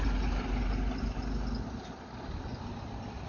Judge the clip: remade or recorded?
recorded